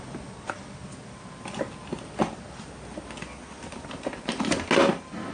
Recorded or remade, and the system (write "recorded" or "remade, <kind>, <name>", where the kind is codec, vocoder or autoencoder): recorded